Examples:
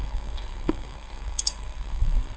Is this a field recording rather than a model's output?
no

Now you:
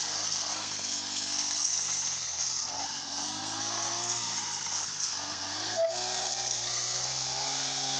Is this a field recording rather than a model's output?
no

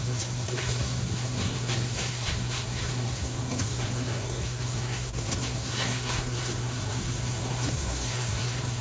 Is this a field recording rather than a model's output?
no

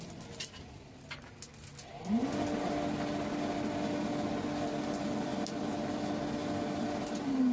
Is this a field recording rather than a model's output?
yes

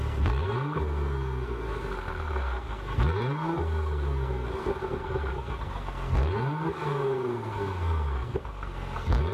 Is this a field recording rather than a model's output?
no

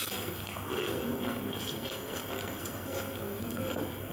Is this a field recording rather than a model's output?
no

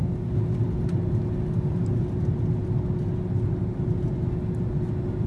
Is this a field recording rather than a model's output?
yes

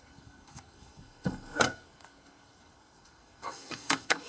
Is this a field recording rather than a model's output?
no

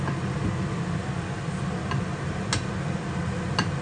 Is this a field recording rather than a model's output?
yes